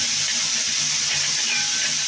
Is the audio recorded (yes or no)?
yes